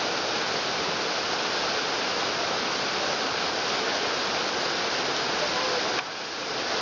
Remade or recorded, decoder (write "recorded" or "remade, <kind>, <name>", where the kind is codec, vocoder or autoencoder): recorded